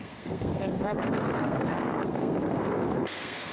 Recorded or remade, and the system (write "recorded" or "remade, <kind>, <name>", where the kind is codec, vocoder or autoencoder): remade, codec, SNAC